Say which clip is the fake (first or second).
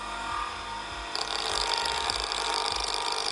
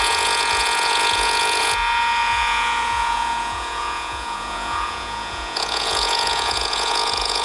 second